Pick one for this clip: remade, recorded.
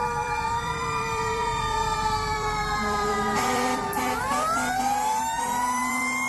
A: remade